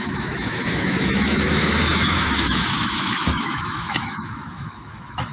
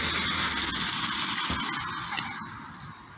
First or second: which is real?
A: second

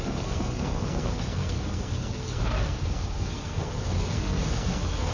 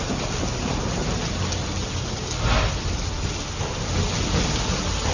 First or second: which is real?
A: second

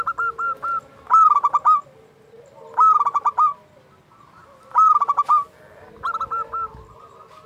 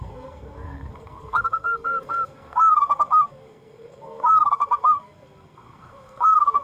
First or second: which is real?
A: first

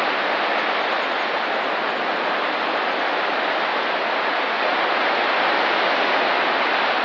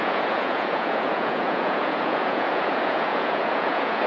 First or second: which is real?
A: first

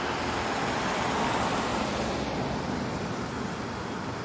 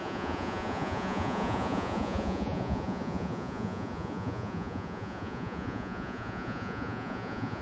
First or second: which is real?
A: first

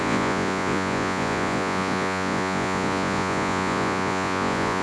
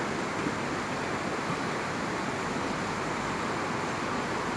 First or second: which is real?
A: second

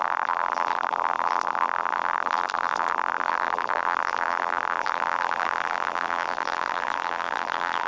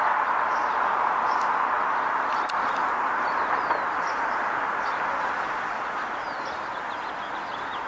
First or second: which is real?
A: second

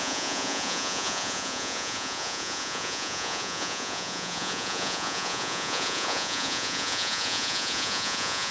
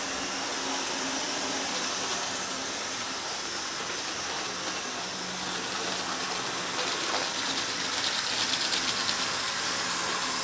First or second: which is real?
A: second